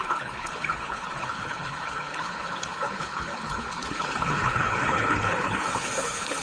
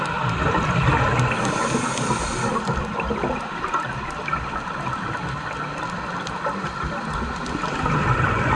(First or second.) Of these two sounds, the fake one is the first